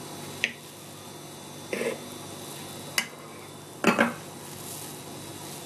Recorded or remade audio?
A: recorded